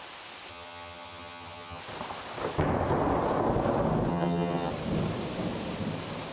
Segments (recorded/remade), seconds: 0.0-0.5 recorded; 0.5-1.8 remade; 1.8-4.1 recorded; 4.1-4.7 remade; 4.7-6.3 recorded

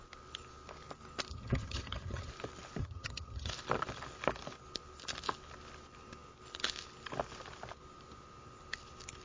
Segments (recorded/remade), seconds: 0.0-1.3 recorded; 1.3-2.3 remade; 2.3-2.8 recorded; 2.8-3.5 remade; 3.5-9.2 recorded

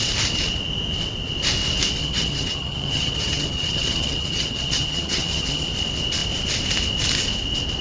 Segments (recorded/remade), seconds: 0.0-2.0 recorded; 2.0-5.7 remade; 5.7-7.8 recorded